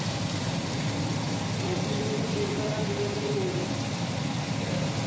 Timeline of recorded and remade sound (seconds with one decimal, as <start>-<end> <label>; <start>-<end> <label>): 0.0-1.1 remade; 1.1-4.2 recorded; 4.2-5.1 remade